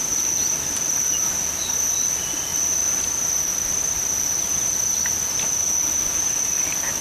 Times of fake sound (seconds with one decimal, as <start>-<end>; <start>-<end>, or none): none